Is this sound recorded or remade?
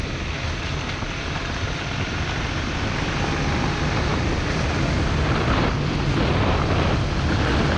recorded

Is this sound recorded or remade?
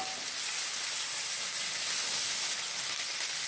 recorded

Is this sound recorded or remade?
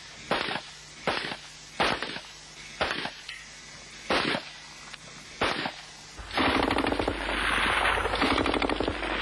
recorded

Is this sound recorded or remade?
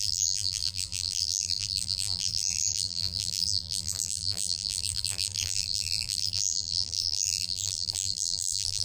remade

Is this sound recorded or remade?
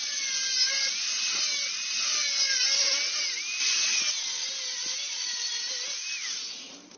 recorded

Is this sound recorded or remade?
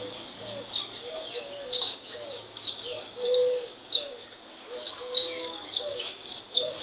remade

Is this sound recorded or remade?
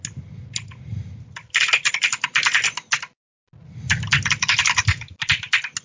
recorded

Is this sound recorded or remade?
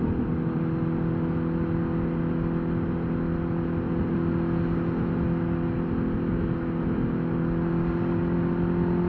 recorded